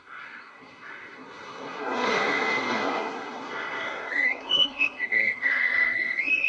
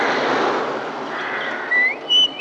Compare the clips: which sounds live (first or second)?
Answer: second